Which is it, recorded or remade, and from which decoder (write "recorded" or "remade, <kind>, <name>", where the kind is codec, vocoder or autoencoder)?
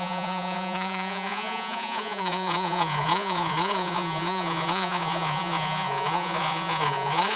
remade, vocoder, Vocos